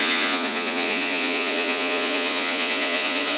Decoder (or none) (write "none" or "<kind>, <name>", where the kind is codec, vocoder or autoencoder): vocoder, Vocos